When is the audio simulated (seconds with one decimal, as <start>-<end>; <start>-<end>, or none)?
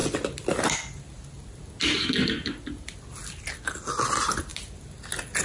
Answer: none